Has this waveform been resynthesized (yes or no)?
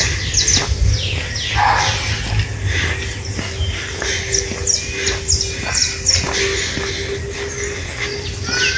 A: no